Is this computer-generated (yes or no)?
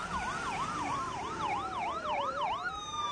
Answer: yes